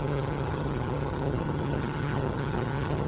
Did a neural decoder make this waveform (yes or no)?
yes